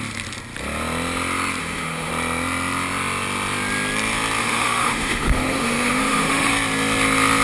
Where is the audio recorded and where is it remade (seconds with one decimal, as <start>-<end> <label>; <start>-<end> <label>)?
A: 0.0-1.6 recorded; 1.6-2.1 remade; 2.1-4.4 recorded; 4.4-6.5 remade; 6.5-7.4 recorded